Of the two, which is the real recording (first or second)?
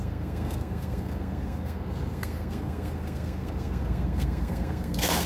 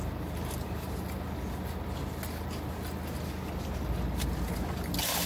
second